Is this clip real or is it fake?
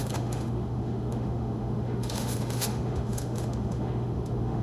fake